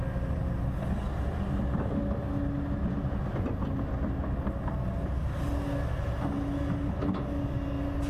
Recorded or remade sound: recorded